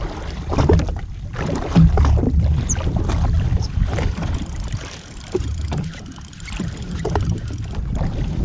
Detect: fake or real fake